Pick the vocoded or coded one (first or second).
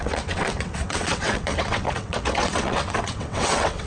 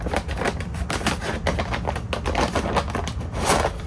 first